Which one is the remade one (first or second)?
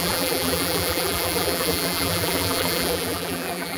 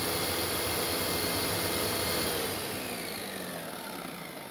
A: first